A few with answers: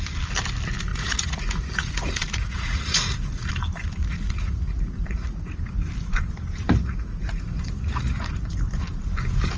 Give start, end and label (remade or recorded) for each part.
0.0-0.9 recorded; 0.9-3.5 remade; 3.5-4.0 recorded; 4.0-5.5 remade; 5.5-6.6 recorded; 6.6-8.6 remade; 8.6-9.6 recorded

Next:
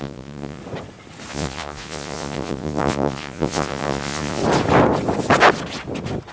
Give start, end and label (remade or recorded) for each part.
0.0-0.6 remade; 0.6-1.3 recorded; 1.3-4.4 remade; 4.4-6.3 recorded

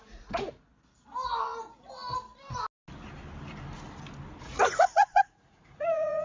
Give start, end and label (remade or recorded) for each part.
0.0-0.7 remade; 0.7-4.4 recorded; 4.4-6.2 remade

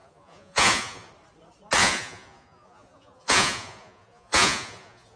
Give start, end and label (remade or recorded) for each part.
0.0-1.1 remade; 1.1-1.8 recorded; 1.8-5.2 remade

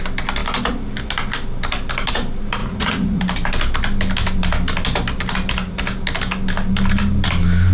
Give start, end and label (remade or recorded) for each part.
0.0-2.6 recorded; 2.6-3.2 remade; 3.2-7.7 recorded

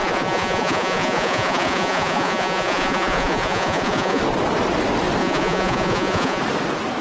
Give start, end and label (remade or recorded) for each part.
0.0-4.2 remade; 4.2-5.2 recorded; 5.2-6.4 remade; 6.4-7.0 recorded